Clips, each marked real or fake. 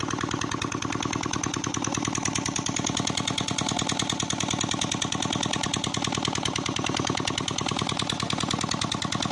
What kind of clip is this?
real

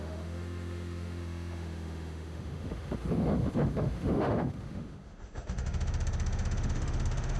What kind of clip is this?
fake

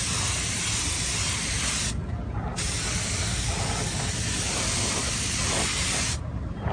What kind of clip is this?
real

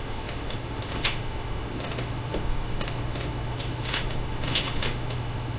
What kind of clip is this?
fake